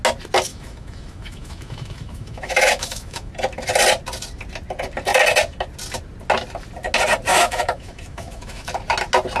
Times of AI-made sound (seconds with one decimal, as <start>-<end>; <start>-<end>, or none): 0.5-3.3; 7.3-8.7